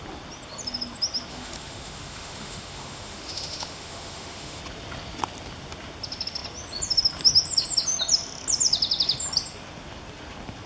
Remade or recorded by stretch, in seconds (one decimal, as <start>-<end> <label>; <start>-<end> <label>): 0.0-1.3 recorded; 1.3-4.6 remade; 4.6-10.7 recorded